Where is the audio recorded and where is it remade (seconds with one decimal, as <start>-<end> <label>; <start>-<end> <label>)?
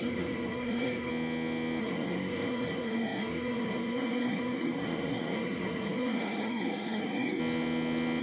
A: 0.0-1.1 remade; 1.1-1.8 recorded; 1.8-7.4 remade; 7.4-8.2 recorded